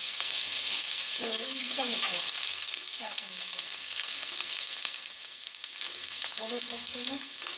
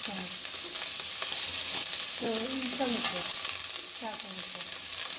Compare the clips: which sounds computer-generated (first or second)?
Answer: first